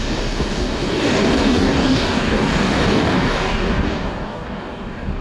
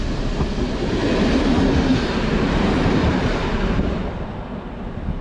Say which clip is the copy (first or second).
first